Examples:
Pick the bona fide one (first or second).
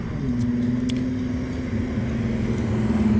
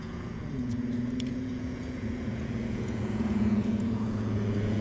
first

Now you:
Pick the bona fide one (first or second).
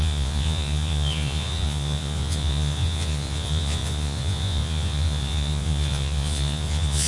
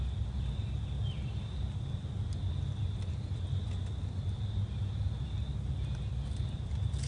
second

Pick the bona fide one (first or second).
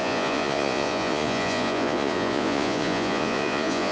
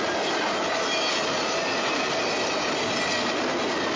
second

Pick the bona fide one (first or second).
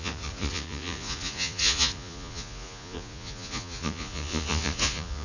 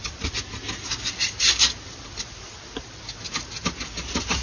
second